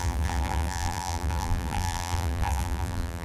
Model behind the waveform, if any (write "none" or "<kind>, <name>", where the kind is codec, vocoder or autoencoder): vocoder, BigVGAN v2